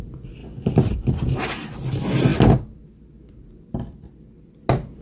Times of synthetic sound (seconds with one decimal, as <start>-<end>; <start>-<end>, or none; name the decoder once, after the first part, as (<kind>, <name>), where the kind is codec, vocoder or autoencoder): none